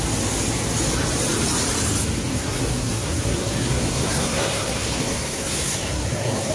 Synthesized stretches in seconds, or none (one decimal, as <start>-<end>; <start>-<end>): 2.3-6.5